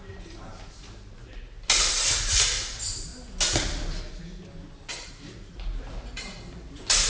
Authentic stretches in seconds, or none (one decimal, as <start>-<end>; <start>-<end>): 3.1-5.1